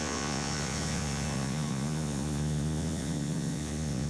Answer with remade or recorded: remade